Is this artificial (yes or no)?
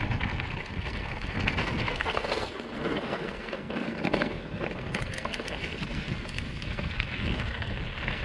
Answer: yes